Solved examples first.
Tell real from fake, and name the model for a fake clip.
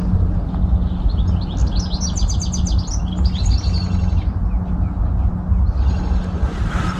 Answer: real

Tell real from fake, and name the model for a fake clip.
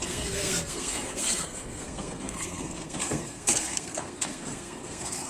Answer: fake, codec, SNAC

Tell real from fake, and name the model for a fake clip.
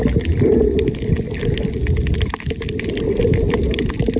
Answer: fake, vocoder, BigVGAN v2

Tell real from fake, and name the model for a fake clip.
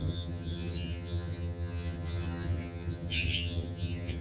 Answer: fake, vocoder, HiFi-GAN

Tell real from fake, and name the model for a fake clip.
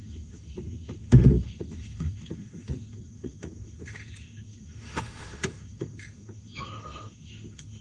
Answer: fake, autoencoder, DAC-VAE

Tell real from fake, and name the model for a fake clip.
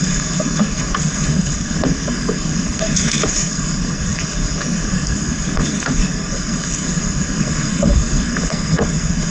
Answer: fake, codec, SNAC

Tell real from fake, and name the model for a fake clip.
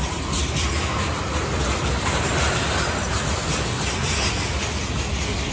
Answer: real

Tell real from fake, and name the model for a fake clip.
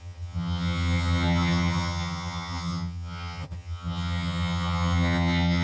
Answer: fake, vocoder, HiFi-GAN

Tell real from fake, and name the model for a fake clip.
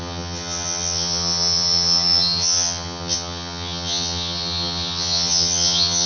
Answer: fake, vocoder, HiFi-GAN